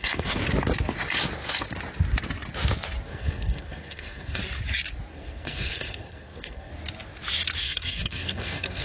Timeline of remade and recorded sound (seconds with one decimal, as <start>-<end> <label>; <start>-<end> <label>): 0.0-0.4 remade; 0.4-3.1 recorded; 3.1-4.4 remade; 4.4-5.1 recorded; 5.1-6.7 remade; 6.7-7.6 recorded; 7.6-8.8 remade